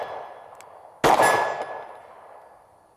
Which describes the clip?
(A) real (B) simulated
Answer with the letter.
A